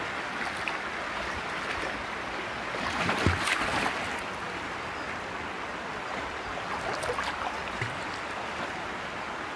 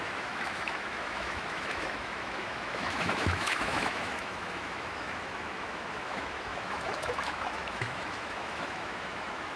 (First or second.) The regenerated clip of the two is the second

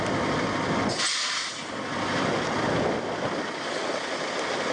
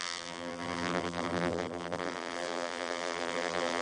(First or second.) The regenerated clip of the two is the second